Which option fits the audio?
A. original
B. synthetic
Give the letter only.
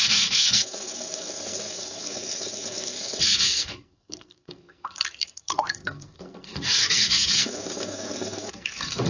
B